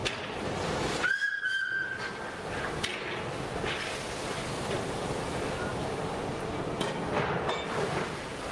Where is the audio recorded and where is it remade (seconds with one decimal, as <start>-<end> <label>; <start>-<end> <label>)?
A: 0.0-5.8 recorded; 5.8-6.4 remade; 6.4-8.5 recorded